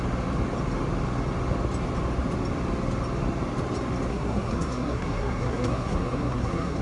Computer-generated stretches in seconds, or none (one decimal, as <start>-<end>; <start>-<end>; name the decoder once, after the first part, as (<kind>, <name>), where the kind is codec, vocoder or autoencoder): 4.1-6.8 (codec, SNAC)